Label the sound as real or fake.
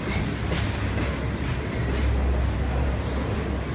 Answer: real